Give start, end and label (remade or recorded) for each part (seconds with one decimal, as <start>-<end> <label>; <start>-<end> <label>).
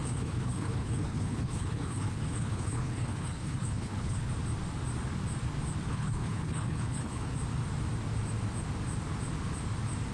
0.0-4.3 remade; 4.3-5.9 recorded; 5.9-7.3 remade; 7.3-10.1 recorded